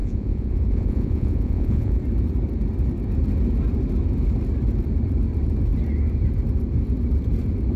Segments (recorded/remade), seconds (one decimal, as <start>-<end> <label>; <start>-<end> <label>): 0.0-2.0 remade; 2.0-7.8 recorded